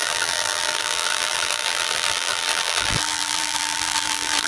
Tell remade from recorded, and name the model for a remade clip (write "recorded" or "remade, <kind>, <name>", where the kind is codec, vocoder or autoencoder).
remade, vocoder, BigVGAN v2